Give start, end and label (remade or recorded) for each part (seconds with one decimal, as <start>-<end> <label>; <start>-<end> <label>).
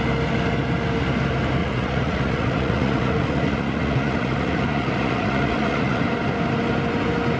0.0-1.6 recorded; 1.6-6.0 remade; 6.0-7.4 recorded